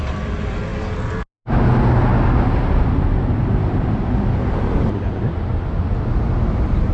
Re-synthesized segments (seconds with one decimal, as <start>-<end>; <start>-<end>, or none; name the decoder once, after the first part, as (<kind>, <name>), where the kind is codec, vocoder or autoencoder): none